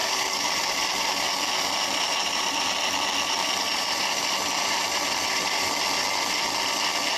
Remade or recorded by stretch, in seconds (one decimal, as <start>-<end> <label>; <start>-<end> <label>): 0.0-0.5 remade; 0.5-7.2 recorded